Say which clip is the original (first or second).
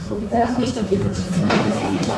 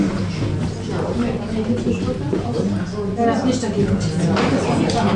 second